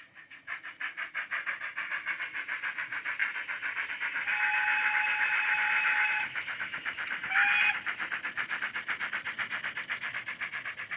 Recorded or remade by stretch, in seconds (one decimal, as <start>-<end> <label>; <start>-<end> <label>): 0.0-5.8 recorded; 5.8-6.9 remade; 6.9-11.0 recorded